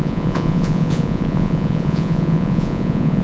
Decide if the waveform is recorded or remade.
remade